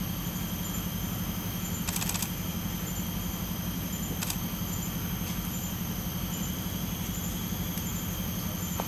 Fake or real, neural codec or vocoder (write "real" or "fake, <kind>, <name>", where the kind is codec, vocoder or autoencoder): real